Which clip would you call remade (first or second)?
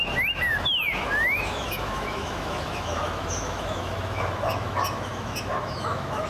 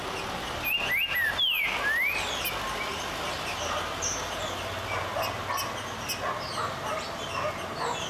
first